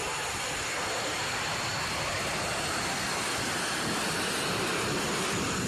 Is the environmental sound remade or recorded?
recorded